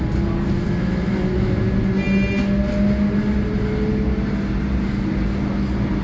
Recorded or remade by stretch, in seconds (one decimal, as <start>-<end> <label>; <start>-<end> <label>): 0.0-0.8 recorded; 0.8-1.6 remade; 1.6-6.0 recorded